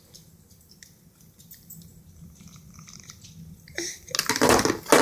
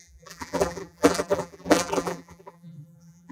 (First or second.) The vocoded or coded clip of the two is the second